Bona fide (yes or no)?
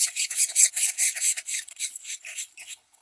no